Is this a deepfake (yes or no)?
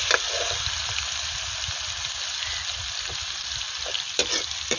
no